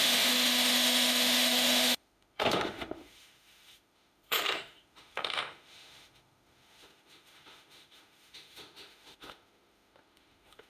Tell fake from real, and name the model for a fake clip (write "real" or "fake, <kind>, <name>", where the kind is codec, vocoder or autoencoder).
fake, autoencoder, DAC-VAE